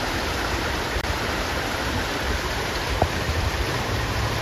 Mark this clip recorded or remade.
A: remade